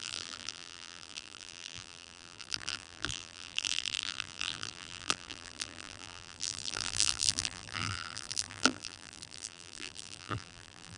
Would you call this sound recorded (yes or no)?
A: no